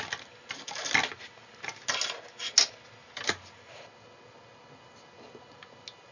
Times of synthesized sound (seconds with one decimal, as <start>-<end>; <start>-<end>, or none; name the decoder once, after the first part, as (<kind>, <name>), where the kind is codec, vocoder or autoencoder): 3.0-3.8 (vocoder, BigVGAN v2)